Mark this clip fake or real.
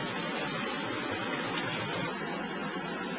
real